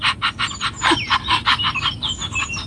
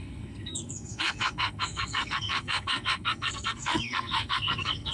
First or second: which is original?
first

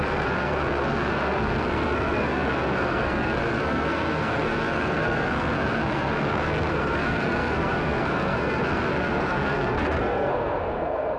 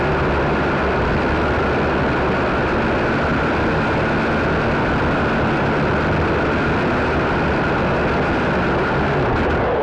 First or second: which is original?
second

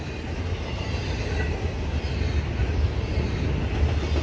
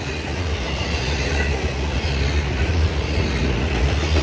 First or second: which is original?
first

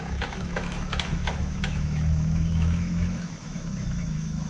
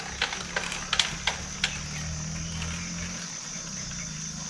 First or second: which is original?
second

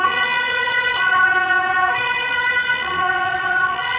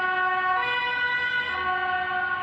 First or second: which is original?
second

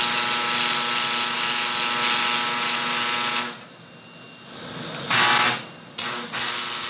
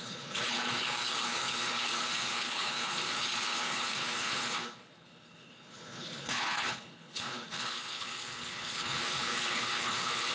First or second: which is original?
first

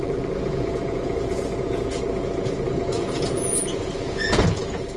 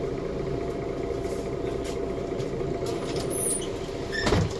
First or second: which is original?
second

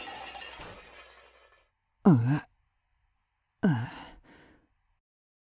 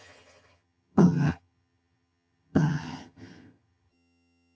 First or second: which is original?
first